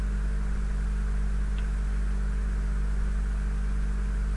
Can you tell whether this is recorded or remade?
recorded